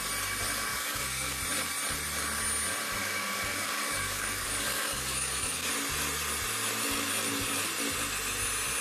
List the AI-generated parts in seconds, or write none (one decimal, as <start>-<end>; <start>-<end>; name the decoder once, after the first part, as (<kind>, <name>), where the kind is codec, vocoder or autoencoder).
0.7-1.4 (codec, DAC); 3.0-5.7